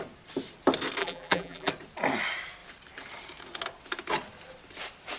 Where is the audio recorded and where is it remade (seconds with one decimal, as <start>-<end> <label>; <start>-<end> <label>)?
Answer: 0.0-1.0 recorded; 1.0-1.7 remade; 1.7-5.2 recorded